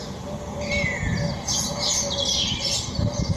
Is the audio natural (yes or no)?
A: yes